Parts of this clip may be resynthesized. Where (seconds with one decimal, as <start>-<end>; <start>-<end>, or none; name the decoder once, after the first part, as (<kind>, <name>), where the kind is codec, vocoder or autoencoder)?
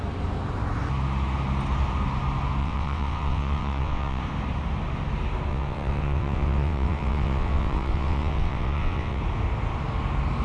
2.6-4.2 (vocoder, WaveNeXt); 5.5-9.2